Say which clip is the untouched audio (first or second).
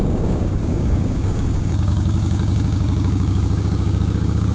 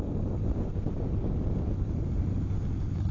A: second